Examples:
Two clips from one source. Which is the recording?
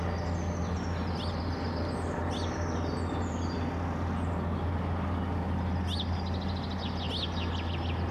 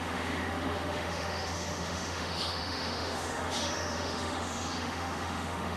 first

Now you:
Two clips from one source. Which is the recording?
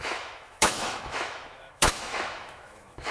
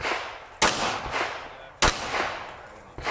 second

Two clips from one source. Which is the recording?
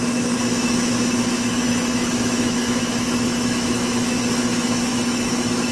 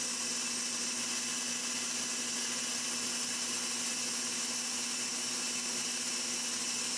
second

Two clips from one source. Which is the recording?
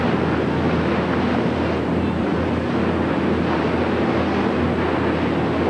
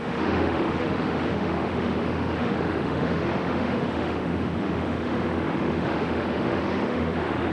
first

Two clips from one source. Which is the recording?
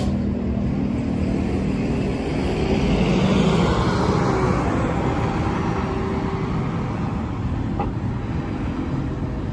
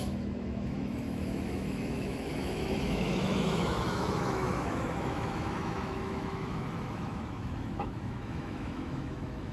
first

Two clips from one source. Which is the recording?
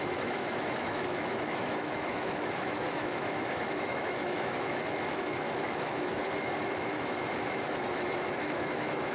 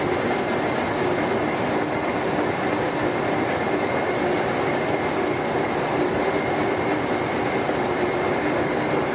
second